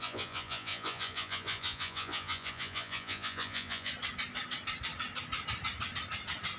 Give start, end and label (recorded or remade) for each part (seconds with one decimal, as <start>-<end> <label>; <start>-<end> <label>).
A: 0.0-3.9 remade; 3.9-6.6 recorded